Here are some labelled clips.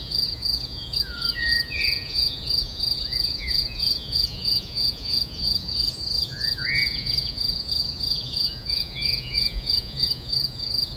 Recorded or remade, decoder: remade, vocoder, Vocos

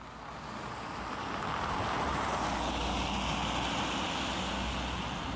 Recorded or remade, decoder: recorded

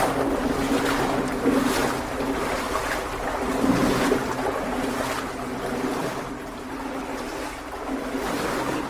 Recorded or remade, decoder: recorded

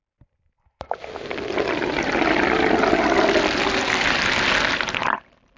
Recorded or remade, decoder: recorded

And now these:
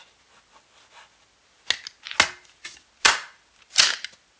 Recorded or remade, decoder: recorded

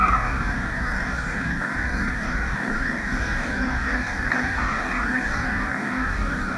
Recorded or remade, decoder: remade, codec, DAC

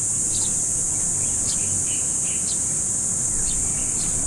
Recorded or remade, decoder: recorded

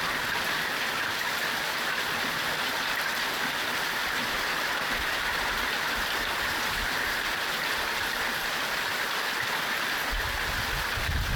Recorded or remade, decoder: recorded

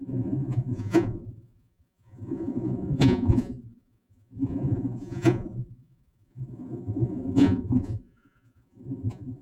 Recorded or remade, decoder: remade, vocoder, Vocos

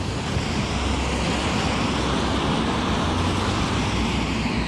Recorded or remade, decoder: recorded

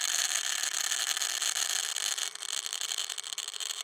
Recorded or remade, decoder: recorded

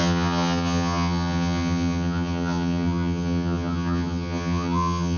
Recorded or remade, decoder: remade, vocoder, HiFi-GAN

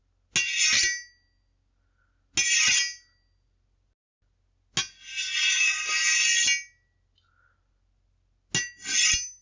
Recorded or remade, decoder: recorded